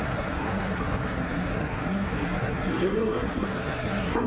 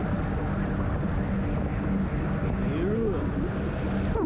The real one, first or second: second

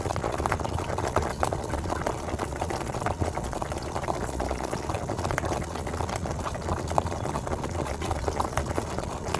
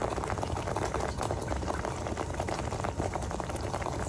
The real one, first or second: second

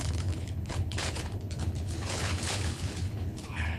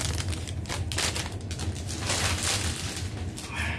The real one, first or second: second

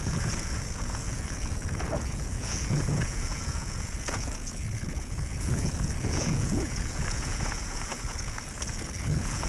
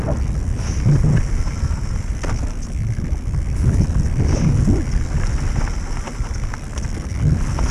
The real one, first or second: second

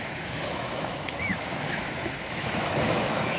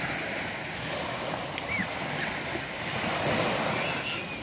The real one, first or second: second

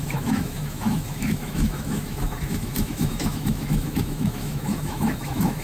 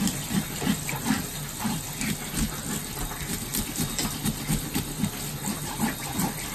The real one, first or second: second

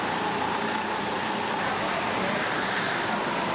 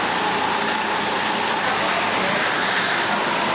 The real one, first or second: second